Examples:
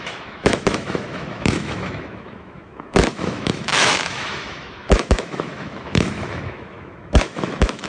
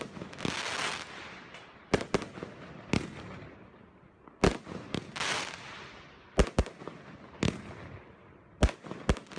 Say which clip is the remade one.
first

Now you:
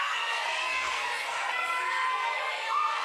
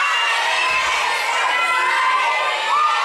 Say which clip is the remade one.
first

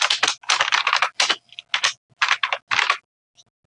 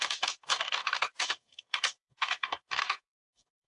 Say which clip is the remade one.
second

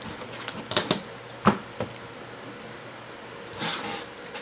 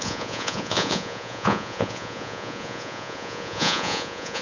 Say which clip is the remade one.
second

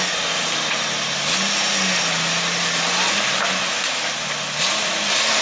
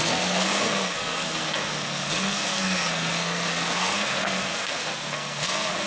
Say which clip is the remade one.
second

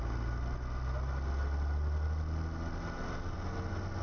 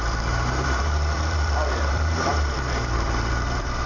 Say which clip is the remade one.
second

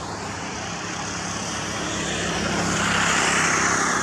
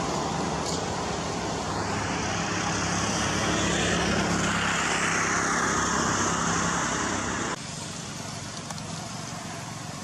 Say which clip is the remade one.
first